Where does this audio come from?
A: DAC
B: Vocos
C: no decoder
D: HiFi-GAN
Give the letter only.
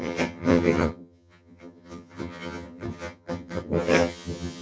D